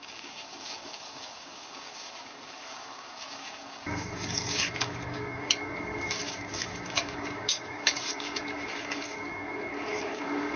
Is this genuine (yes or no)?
no